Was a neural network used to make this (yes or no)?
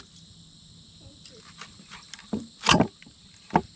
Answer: no